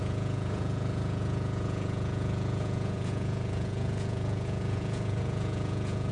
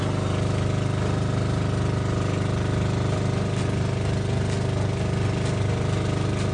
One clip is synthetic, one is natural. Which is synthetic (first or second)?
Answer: first